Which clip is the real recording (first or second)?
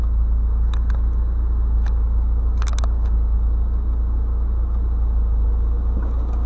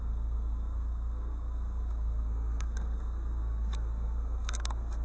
first